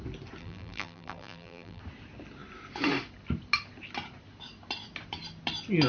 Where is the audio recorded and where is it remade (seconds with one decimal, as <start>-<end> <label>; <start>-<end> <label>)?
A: 0.0-0.4 recorded; 0.4-1.8 remade; 1.8-5.9 recorded